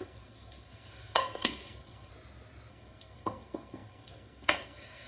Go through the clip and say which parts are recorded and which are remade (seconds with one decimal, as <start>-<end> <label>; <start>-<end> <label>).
0.0-2.1 remade; 2.1-2.7 recorded; 2.7-5.1 remade